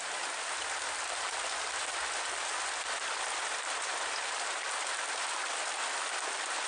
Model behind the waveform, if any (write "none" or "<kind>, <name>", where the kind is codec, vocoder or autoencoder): vocoder, BigVGAN v2